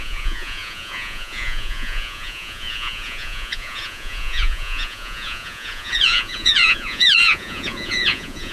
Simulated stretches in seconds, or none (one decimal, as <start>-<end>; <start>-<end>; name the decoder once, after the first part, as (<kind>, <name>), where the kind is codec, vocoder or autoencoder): 0.0-8.5 (vocoder, Vocos)